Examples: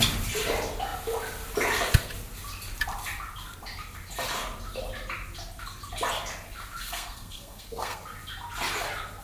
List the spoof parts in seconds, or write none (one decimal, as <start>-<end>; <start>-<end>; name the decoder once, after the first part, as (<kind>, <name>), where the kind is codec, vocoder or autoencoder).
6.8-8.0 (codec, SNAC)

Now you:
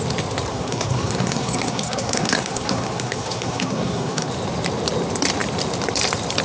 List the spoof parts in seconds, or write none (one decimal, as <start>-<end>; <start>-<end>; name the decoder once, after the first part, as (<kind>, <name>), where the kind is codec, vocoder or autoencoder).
0.5-4.3 (codec, SNAC)

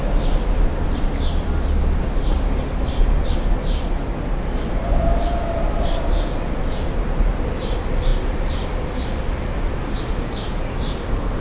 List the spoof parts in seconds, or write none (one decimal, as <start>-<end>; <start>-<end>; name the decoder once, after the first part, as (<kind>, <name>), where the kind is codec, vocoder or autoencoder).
none